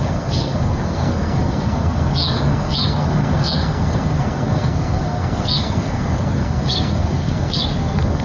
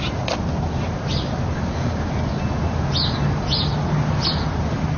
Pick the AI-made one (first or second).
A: first